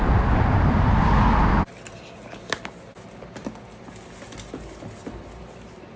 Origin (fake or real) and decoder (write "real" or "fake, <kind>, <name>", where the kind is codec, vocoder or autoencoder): real